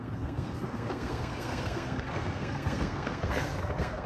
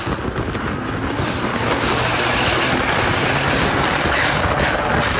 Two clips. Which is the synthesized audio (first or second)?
first